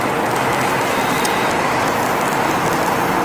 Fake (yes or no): no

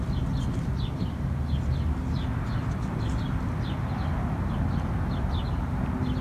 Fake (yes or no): no